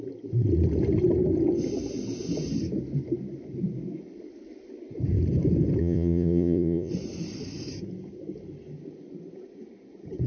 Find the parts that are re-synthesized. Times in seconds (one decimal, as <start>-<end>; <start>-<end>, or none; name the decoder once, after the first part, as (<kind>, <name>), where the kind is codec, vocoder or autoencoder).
5.8-6.9 (vocoder, Vocos)